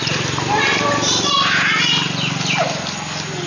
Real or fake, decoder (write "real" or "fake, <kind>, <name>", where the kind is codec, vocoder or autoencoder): real